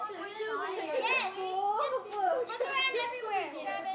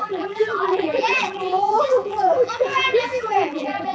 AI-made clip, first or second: second